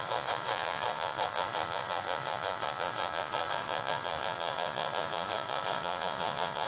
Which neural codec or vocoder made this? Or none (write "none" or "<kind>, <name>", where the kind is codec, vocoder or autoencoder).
vocoder, Vocos